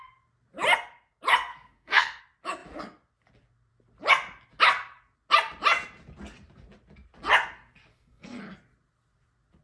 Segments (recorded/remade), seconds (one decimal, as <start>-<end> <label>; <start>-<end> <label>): 0.0-1.5 recorded; 1.5-2.2 remade; 2.2-7.9 recorded; 7.9-8.4 remade; 8.4-9.6 recorded